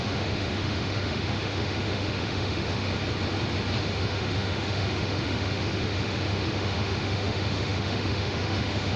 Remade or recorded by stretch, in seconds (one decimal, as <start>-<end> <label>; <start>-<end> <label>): 0.0-2.9 remade; 2.9-3.8 recorded; 3.8-9.0 remade